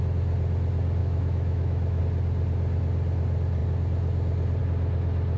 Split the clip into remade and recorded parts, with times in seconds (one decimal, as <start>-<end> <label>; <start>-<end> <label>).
0.0-1.0 recorded; 1.0-2.0 remade; 2.0-5.4 recorded